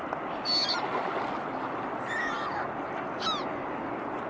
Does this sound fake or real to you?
real